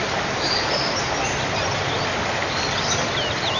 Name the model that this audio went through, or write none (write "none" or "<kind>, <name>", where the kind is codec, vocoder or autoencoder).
none